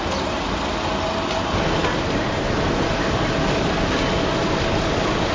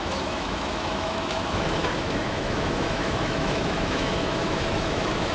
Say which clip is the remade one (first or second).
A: second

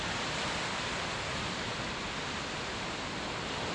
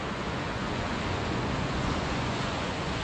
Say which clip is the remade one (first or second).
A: second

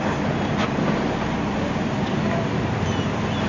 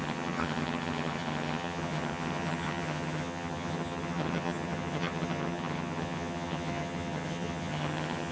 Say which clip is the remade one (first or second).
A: second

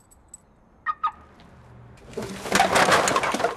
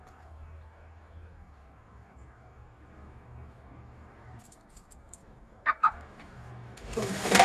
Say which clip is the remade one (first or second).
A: second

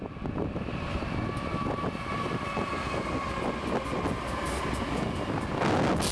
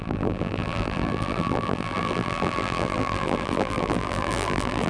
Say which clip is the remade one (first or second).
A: second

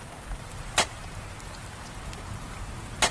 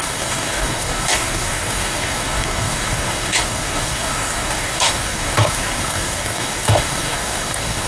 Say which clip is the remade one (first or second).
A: second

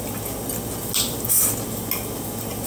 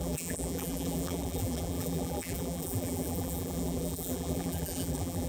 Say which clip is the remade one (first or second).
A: second